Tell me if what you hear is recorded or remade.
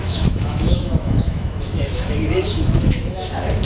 remade